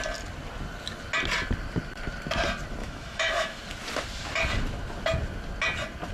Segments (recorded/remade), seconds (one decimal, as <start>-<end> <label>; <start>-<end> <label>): 0.0-2.8 recorded; 2.8-3.6 remade; 3.6-6.1 recorded